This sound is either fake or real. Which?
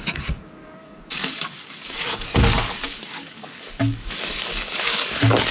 fake